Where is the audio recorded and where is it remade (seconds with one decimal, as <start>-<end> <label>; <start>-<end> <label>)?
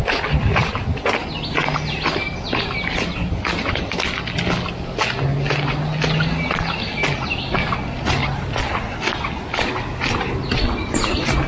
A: 0.0-11.5 recorded